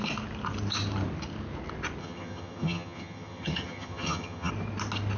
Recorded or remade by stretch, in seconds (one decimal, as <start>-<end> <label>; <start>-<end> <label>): 0.0-2.0 recorded; 2.0-4.5 remade; 4.5-5.2 recorded